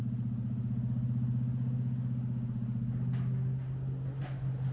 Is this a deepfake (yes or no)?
no